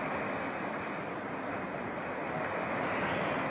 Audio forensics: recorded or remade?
recorded